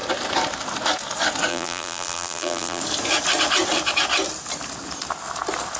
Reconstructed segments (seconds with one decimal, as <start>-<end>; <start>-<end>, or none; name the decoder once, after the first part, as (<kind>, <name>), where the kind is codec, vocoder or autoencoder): 1.5-2.8 (vocoder, BigVGAN v2)